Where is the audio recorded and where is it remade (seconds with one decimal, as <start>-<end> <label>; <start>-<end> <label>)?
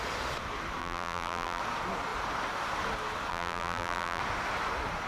0.0-0.8 recorded; 0.8-1.6 remade; 1.6-3.3 recorded; 3.3-4.2 remade; 4.2-5.1 recorded